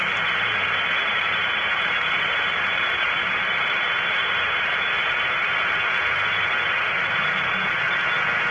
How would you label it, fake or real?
fake